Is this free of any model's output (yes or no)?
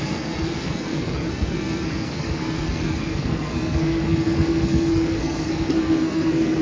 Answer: no